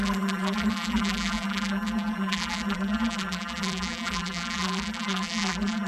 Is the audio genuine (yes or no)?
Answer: no